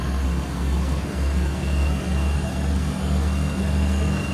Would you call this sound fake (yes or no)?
yes